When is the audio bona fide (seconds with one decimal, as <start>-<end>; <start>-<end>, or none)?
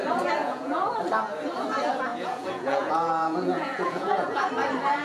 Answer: 0.0-0.4; 0.9-2.1; 4.5-5.0